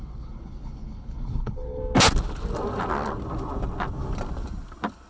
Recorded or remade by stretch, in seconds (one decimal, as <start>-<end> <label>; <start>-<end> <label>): 0.0-1.8 remade; 1.8-5.1 recorded